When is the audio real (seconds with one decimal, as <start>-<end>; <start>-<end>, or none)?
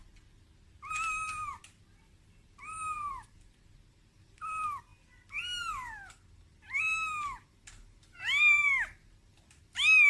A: 0.0-10.1